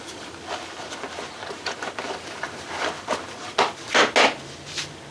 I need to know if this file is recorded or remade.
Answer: recorded